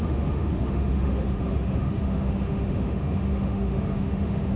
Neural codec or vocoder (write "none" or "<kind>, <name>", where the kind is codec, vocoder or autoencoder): autoencoder, DAC-VAE